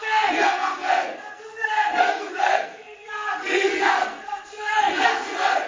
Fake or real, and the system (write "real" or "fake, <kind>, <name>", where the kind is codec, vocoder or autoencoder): fake, codec, SNAC